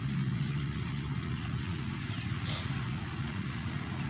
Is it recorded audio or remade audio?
remade